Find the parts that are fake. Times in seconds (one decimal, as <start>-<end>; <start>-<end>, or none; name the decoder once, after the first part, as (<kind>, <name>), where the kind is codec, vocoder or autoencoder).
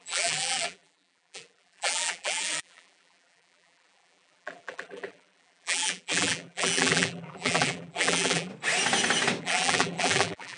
0.0-8.5 (vocoder, BigVGAN v2); 9.4-10.6